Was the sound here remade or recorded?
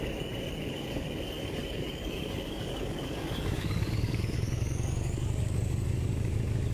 remade